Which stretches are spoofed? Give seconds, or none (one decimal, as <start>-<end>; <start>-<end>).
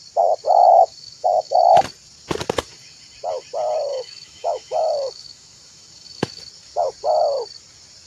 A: 0.6-1.8; 3.9-6.4